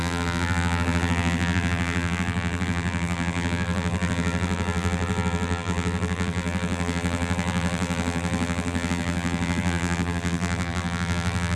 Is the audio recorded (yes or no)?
no